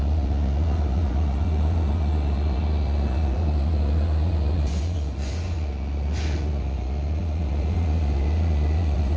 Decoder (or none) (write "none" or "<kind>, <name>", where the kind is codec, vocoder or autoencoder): vocoder, Vocos